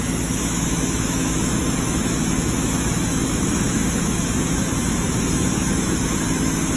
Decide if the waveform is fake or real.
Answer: fake